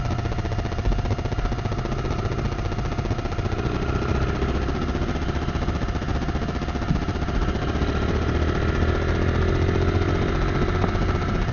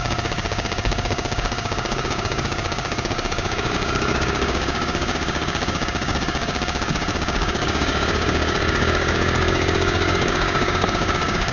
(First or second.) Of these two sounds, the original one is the first